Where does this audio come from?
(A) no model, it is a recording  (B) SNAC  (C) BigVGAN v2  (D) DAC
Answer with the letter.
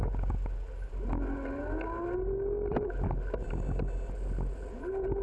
A